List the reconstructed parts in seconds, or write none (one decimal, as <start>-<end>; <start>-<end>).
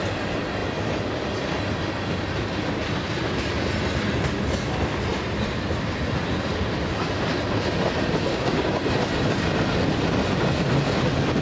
8.3-8.8